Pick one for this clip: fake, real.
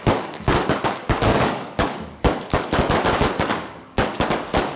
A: fake